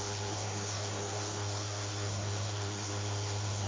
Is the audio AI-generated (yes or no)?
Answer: yes